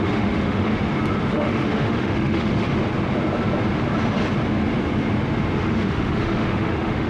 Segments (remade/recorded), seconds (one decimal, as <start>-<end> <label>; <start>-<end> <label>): 0.0-0.7 remade; 0.7-1.3 recorded; 1.3-2.7 remade; 2.7-5.6 recorded; 5.6-7.1 remade